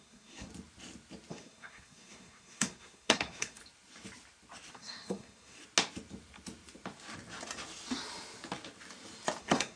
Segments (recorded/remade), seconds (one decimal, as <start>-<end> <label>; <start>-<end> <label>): 0.0-0.5 remade; 0.5-1.3 recorded; 1.3-3.6 remade; 3.6-4.7 recorded; 4.7-5.6 remade; 5.6-9.4 recorded; 9.4-9.8 remade